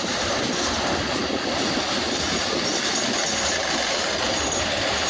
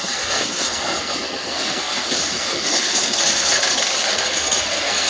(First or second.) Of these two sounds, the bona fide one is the first